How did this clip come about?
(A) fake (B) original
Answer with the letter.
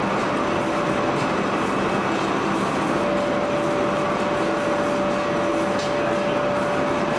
B